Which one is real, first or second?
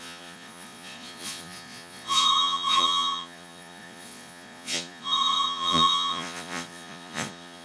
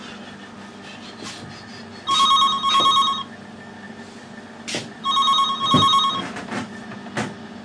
second